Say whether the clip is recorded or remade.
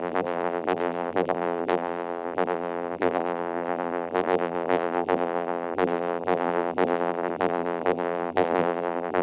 remade